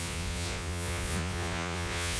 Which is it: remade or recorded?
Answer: remade